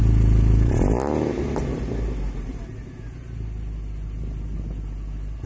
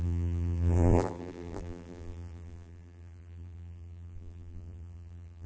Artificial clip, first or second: second